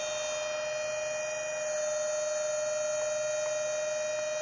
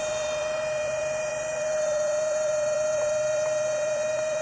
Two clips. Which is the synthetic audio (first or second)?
second